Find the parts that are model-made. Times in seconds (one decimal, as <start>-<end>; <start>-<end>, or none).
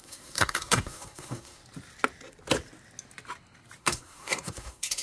0.0-1.6; 3.8-5.0